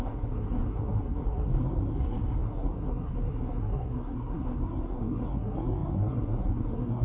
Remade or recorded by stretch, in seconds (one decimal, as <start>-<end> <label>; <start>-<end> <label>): 0.0-7.0 remade